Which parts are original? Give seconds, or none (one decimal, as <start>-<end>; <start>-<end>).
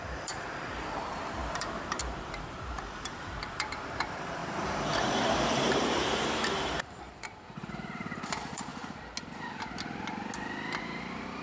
8.7-10.8